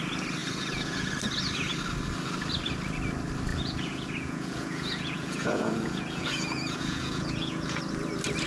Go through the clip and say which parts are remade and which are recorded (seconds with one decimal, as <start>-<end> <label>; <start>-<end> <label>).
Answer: 0.0-0.4 recorded; 0.4-1.1 remade; 1.1-3.5 recorded; 3.5-7.8 remade; 7.8-8.5 recorded